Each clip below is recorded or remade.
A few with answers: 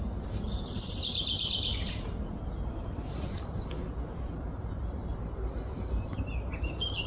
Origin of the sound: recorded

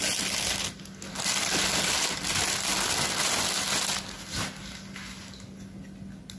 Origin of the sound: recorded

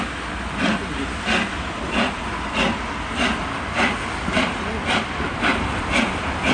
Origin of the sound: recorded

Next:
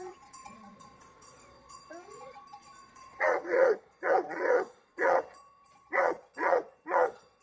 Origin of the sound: remade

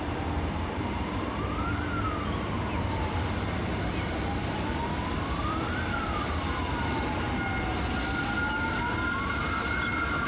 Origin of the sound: recorded